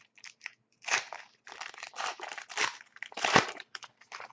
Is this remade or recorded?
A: remade